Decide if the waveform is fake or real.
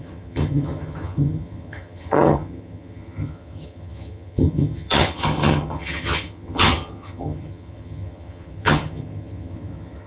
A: fake